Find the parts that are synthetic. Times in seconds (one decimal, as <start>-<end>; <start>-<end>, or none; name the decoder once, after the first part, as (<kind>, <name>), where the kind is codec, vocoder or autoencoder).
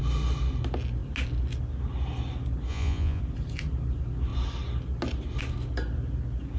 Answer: 2.7-3.2 (vocoder, Vocos)